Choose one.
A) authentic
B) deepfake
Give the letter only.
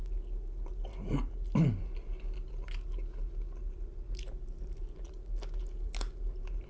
A